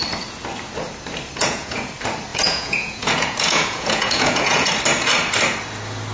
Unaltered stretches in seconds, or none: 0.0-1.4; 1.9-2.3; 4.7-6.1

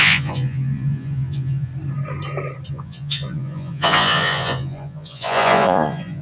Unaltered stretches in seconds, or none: 1.7-2.7